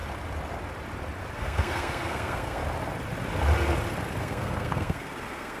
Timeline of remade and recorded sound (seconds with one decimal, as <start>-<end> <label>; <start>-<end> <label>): 0.0-1.3 recorded; 1.3-2.6 remade; 2.6-4.2 recorded; 4.2-5.6 remade